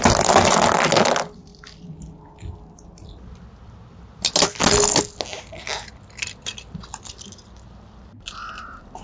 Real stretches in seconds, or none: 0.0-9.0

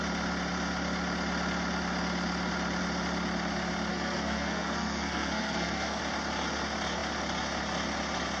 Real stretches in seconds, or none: 0.0-3.9; 6.0-8.4